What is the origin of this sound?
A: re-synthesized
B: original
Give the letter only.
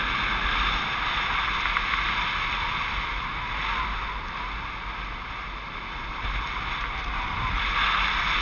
B